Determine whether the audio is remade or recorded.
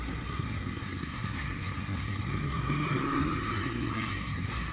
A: remade